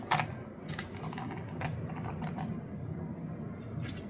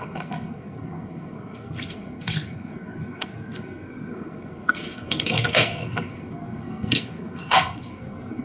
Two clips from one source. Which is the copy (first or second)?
second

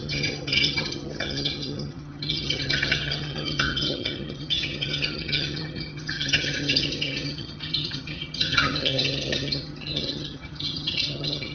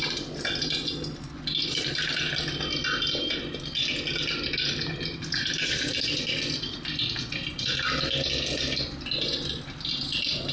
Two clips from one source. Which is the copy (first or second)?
first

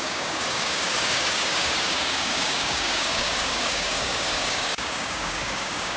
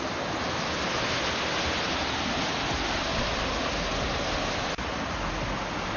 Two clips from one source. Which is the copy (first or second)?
first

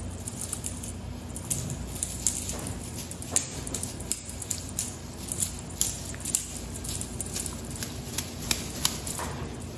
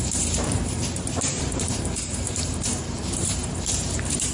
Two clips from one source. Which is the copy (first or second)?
second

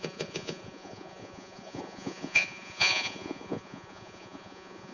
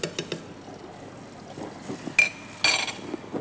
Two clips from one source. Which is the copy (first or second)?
first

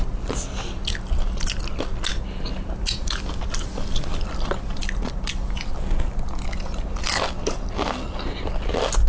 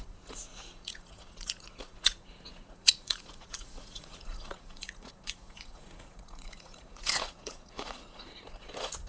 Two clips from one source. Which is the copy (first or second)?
second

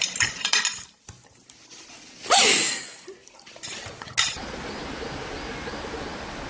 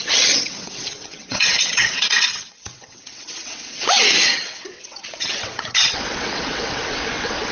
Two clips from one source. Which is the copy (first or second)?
second